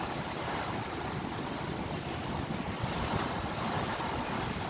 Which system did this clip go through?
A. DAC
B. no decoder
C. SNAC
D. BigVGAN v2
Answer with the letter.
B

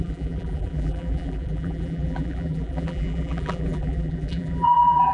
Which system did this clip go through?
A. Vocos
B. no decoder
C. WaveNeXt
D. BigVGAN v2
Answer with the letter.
D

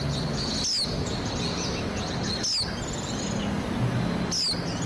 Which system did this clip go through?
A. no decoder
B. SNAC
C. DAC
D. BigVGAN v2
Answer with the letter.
A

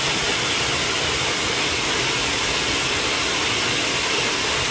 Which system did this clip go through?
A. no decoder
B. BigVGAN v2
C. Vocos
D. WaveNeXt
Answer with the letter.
A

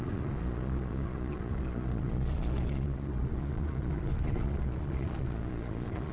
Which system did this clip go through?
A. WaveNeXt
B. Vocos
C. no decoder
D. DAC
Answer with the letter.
B